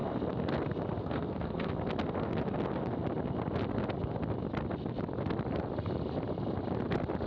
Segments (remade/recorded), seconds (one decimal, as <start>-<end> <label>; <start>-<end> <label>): 0.0-1.0 recorded; 1.0-1.7 remade; 1.7-7.3 recorded